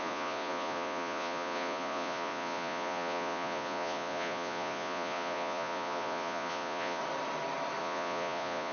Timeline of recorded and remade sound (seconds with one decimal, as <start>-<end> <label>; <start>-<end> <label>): 0.0-7.0 remade; 7.0-7.8 recorded; 7.8-8.7 remade